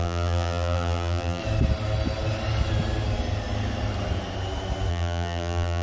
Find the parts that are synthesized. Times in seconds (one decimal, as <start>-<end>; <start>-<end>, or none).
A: 0.0-1.4; 4.9-5.8